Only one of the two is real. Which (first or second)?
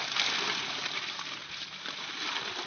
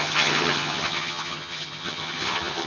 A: first